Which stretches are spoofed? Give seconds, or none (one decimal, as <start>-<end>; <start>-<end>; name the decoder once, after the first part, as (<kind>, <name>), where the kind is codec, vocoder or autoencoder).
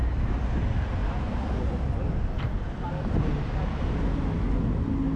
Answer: none